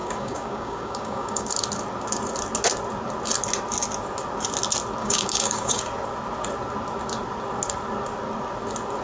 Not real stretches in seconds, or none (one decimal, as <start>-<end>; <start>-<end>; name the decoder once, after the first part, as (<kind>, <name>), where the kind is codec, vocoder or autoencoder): 0.0-1.5 (codec, DAC); 5.0-5.8